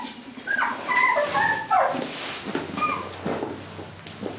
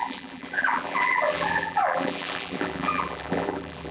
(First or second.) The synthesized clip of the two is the second